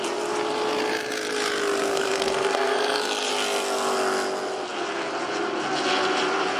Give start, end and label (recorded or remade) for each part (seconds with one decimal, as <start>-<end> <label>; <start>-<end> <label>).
0.0-1.9 recorded; 1.9-3.3 remade; 3.3-6.6 recorded